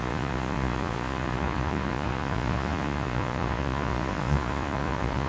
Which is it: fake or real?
fake